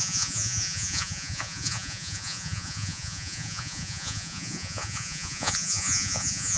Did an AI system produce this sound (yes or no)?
yes